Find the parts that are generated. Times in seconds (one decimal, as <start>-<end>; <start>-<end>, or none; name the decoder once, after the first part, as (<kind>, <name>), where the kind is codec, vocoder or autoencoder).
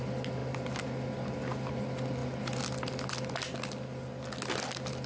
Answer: none